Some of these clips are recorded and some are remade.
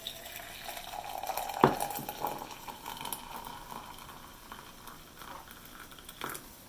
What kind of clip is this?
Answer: recorded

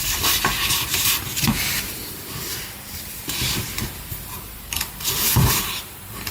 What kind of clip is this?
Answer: remade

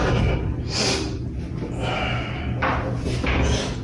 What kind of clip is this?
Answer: recorded